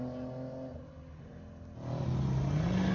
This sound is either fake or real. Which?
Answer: real